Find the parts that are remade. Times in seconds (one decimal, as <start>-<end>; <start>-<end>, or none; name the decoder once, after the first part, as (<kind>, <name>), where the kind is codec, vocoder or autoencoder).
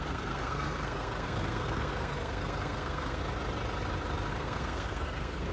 0.0-3.2 (codec, SNAC); 4.3-5.5